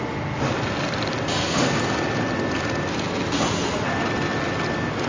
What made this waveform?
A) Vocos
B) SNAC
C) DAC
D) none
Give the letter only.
D